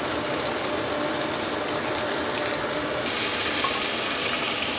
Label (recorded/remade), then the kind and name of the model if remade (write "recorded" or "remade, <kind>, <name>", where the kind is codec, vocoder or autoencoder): recorded